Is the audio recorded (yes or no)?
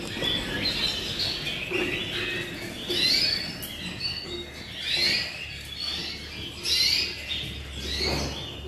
yes